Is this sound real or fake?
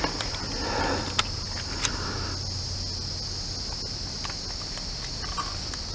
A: real